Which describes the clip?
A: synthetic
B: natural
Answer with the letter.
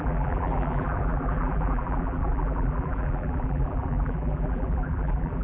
A